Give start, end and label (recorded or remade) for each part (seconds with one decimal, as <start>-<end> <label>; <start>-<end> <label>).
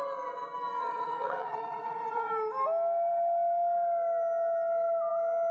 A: 0.0-0.8 recorded; 0.8-2.3 remade; 2.3-5.5 recorded